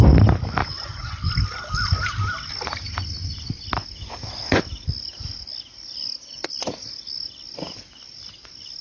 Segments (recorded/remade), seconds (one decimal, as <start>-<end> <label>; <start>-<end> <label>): 0.0-0.6 recorded; 0.6-1.3 remade; 1.3-8.8 recorded